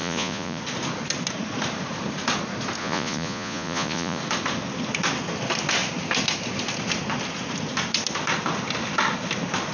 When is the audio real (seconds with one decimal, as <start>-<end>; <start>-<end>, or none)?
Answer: 0.6-2.8; 4.2-9.7